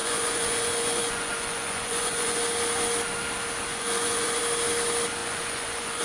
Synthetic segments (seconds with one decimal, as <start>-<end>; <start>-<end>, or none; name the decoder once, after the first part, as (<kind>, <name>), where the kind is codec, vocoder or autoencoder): 0.0-2.4 (vocoder, Vocos); 3.7-4.4; 5.2-6.0